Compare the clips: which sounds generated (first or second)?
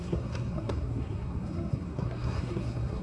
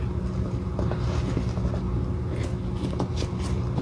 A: first